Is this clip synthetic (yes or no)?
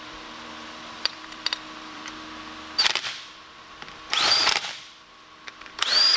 yes